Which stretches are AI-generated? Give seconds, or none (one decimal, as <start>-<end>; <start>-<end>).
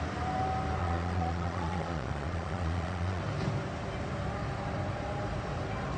0.8-3.2